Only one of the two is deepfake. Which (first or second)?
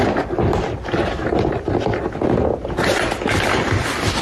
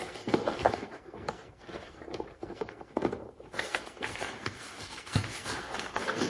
second